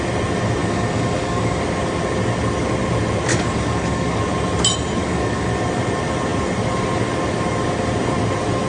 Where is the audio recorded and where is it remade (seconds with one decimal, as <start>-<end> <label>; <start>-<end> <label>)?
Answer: 0.0-0.6 recorded; 0.6-1.6 remade; 1.6-3.3 recorded; 3.3-4.2 remade; 4.2-5.0 recorded; 5.0-5.5 remade; 5.5-8.7 recorded